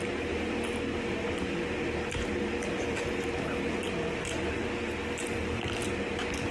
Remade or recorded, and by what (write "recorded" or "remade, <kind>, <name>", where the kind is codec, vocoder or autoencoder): recorded